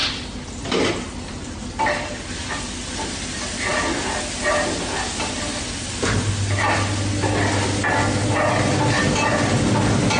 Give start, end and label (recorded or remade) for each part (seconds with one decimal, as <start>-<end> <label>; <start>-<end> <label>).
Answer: 0.0-10.2 recorded